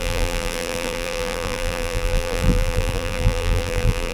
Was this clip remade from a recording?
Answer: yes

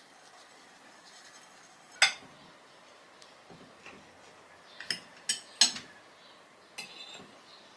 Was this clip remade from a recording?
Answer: no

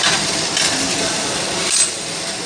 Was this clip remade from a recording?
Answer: yes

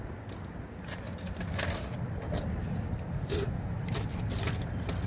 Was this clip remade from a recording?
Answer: no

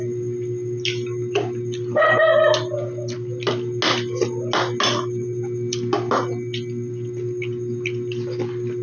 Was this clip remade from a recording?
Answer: no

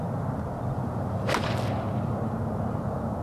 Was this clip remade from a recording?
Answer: no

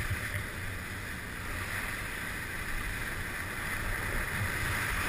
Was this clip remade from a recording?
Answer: no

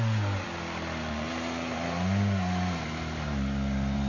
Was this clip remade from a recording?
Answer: no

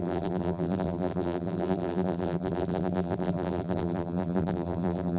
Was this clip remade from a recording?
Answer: yes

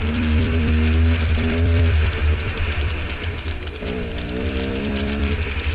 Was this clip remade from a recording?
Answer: yes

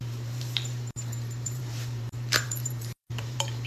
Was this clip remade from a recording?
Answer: yes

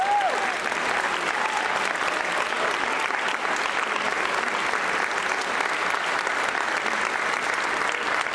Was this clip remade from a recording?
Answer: no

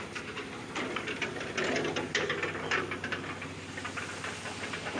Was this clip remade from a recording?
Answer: no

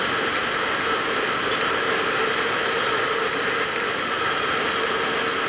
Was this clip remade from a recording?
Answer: no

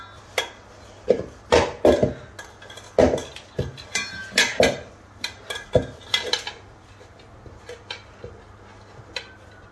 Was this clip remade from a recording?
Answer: no